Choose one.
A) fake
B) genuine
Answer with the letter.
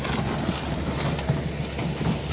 B